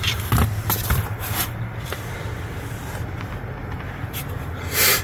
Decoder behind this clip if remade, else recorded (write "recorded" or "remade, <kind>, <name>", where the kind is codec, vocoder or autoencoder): recorded